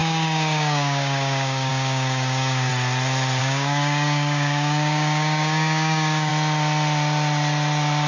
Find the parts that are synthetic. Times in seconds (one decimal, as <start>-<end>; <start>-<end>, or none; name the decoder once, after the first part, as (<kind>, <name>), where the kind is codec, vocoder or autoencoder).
0.0-2.7 (codec, DAC); 3.4-6.3